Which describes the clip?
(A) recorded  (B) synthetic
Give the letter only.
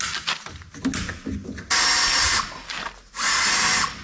A